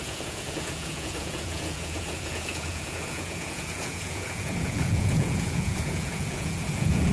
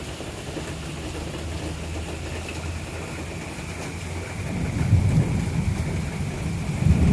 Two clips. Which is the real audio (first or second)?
second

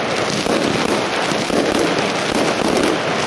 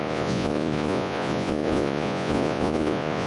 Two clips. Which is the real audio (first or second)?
first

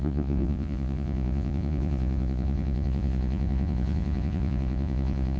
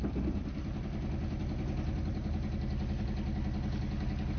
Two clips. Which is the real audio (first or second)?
second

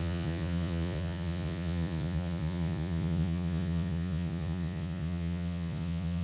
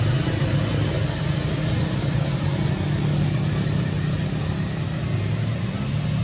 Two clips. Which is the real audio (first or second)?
second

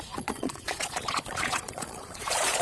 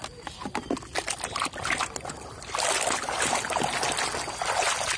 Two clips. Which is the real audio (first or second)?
second